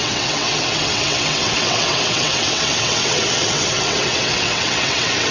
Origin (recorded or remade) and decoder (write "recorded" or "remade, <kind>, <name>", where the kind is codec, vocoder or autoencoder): remade, vocoder, WaveNeXt